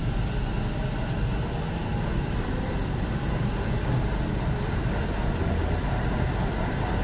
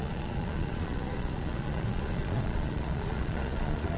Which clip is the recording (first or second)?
first